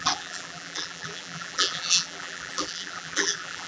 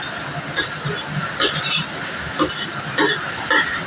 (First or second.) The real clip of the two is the second